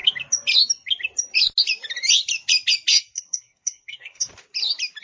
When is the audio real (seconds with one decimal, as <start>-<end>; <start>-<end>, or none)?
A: 0.0-2.9; 4.3-5.0